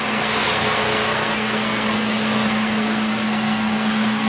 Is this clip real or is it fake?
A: fake